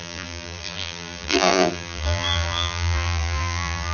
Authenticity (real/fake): fake